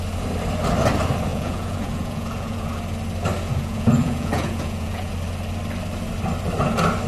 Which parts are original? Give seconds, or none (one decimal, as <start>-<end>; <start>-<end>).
0.0-1.3; 2.7-3.5; 5.1-7.1